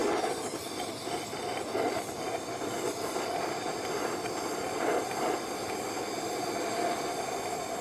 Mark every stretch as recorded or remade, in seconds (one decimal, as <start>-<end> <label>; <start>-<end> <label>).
0.0-7.8 recorded